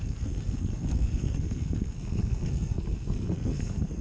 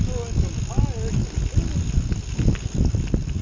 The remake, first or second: first